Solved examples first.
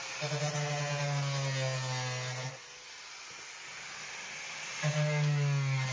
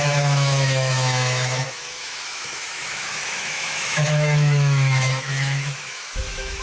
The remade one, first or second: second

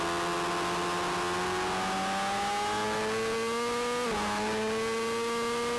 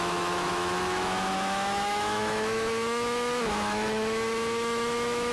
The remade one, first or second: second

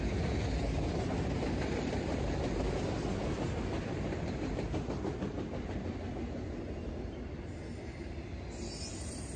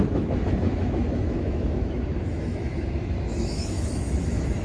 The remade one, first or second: second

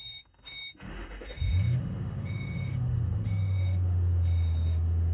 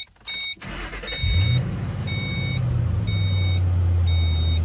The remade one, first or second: first